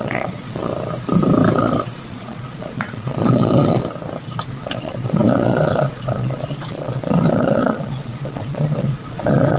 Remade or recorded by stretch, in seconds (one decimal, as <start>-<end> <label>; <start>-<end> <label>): 0.0-0.7 remade; 0.7-1.6 recorded; 1.6-3.8 remade; 3.8-4.5 recorded; 4.5-9.6 remade